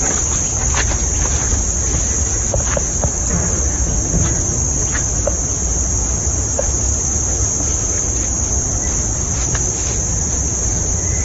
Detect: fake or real real